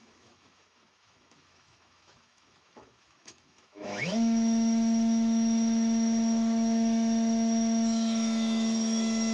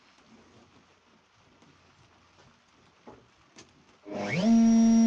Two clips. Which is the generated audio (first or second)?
first